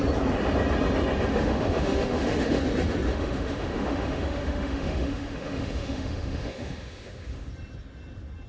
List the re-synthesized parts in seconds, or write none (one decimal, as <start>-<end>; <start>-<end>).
1.3-2.6; 3.1-7.5